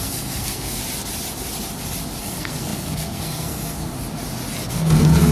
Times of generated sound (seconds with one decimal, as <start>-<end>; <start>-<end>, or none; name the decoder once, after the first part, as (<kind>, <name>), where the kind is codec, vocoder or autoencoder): 0.0-0.8 (codec, SNAC); 2.2-3.9; 4.7-5.3